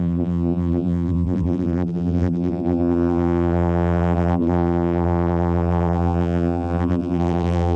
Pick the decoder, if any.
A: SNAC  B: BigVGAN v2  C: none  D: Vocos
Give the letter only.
B